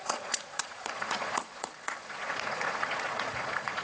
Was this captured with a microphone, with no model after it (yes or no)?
no